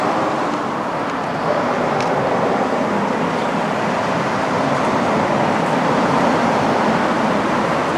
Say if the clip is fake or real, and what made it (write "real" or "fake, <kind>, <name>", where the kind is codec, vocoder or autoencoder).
real